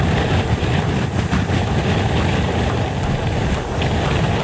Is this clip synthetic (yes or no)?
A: yes